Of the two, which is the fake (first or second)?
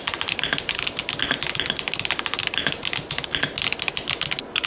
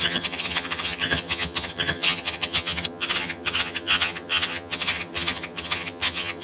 second